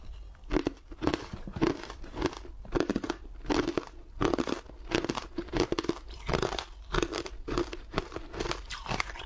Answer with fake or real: fake